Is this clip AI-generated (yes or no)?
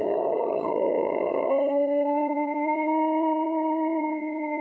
yes